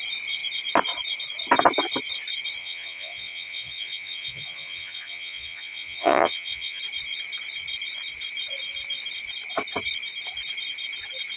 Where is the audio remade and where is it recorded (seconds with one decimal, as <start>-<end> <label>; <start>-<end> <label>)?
0.0-2.6 recorded; 2.6-6.8 remade; 6.8-11.4 recorded

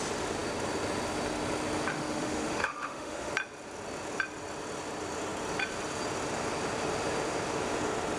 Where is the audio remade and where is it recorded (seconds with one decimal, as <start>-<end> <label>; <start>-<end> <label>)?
0.0-1.9 recorded; 1.9-3.3 remade; 3.3-8.2 recorded

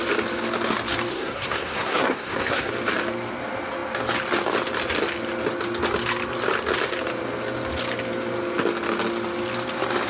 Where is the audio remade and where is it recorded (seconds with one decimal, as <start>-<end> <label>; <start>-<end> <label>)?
0.0-1.1 recorded; 1.1-2.7 remade; 2.7-10.1 recorded

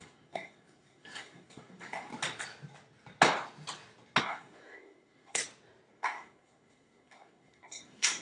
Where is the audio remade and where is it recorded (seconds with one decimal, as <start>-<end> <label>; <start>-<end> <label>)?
0.0-2.1 remade; 2.1-4.2 recorded; 4.2-5.4 remade; 5.4-5.9 recorded; 5.9-8.2 remade

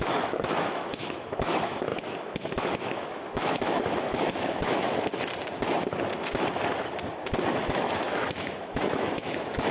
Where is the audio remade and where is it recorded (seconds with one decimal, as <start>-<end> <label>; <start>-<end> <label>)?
0.0-5.1 remade; 5.1-7.6 recorded; 7.6-9.7 remade

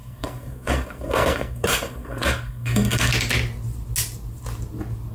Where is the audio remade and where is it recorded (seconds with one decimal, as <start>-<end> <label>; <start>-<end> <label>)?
0.0-3.1 remade; 3.1-5.1 recorded